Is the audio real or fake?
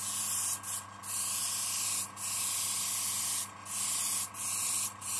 real